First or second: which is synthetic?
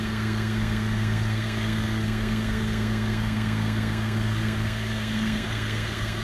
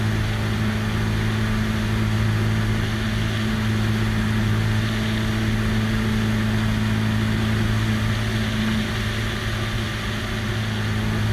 first